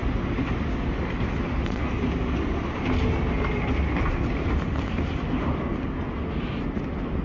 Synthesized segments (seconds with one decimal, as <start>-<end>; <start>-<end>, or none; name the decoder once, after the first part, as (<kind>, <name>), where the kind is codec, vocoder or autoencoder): none